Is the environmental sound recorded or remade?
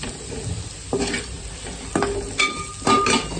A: recorded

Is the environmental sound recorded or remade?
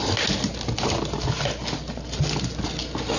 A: recorded